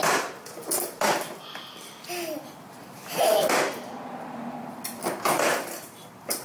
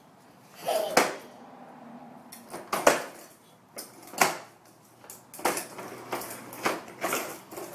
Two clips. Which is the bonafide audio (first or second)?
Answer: second